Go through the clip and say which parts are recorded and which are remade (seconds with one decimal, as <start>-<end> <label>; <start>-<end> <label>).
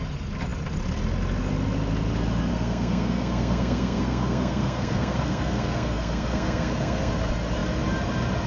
0.0-2.5 recorded; 2.5-7.1 remade; 7.1-8.5 recorded